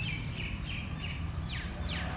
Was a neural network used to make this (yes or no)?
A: no